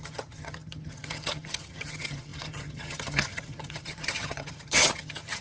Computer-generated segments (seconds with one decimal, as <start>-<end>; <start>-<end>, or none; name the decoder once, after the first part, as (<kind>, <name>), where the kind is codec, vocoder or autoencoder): 0.0-5.4 (vocoder, HiFi-GAN)